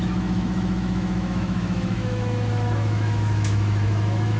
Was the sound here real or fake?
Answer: fake